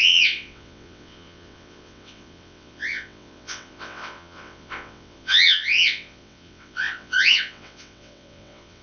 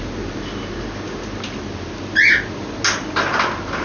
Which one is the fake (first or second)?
first